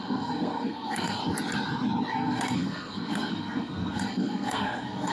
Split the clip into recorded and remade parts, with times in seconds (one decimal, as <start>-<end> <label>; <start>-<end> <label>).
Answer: 0.0-1.2 remade; 1.2-2.1 recorded; 2.1-5.1 remade